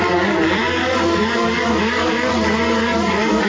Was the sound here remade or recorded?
remade